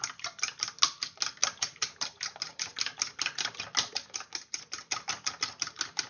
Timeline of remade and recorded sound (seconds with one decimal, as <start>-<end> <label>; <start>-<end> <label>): 0.0-6.1 recorded

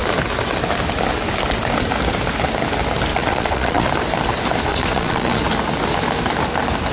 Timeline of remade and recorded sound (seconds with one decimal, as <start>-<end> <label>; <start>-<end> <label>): 0.0-3.1 recorded; 3.1-3.9 remade; 3.9-4.7 recorded; 4.7-5.4 remade; 5.4-6.9 recorded

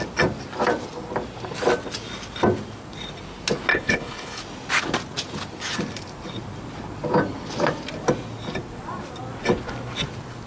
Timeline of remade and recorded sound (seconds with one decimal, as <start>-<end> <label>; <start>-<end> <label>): 0.0-3.7 recorded; 3.7-4.4 remade; 4.4-10.5 recorded

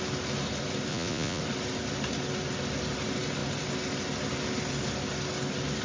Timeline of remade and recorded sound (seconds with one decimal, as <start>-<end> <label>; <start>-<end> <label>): 0.0-0.9 recorded; 0.9-1.4 remade; 1.4-5.8 recorded

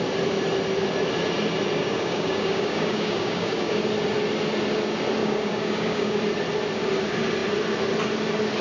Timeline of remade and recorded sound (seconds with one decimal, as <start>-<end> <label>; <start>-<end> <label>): 0.0-1.8 recorded; 1.8-3.8 remade; 3.8-5.2 recorded; 5.2-6.2 remade; 6.2-8.6 recorded

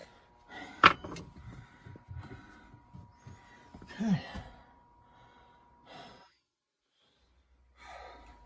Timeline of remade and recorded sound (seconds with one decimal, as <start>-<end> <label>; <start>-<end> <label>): 0.0-8.5 recorded